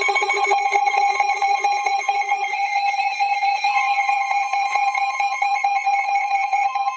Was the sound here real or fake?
fake